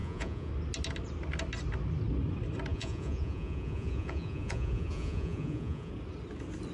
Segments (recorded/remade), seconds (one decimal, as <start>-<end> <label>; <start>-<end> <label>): 0.0-0.5 remade; 0.5-2.7 recorded; 2.7-5.9 remade; 5.9-6.7 recorded